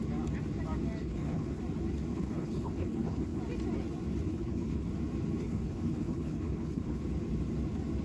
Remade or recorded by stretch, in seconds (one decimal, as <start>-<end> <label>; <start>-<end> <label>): 0.0-1.0 recorded; 1.0-1.6 remade; 1.6-2.1 recorded; 2.1-3.4 remade; 3.4-4.3 recorded; 4.3-4.9 remade; 4.9-5.4 recorded; 5.4-7.0 remade; 7.0-8.0 recorded